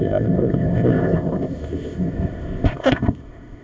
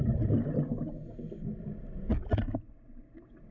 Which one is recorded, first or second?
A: second